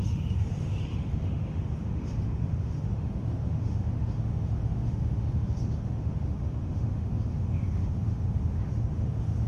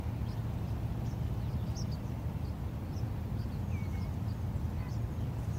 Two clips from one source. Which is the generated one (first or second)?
first